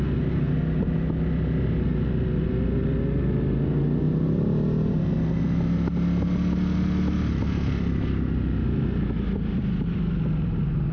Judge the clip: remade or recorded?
recorded